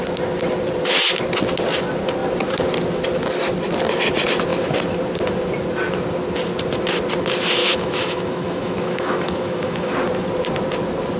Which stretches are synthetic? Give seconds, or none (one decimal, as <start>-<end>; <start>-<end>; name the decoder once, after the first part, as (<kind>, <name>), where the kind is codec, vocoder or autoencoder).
7.6-9.9 (autoencoder, DAC-VAE)